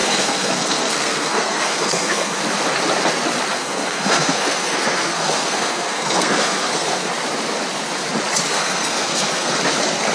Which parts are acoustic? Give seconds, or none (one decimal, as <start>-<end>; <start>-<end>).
2.4-3.5; 7.1-8.5; 9.5-10.1